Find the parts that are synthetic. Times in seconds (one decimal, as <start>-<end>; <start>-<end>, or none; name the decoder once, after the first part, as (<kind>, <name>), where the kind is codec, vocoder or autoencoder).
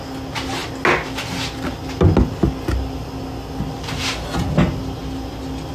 none